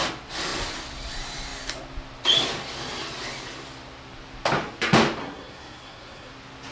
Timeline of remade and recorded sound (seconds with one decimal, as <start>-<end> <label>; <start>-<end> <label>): 0.0-5.2 recorded; 5.2-6.3 remade; 6.3-6.7 recorded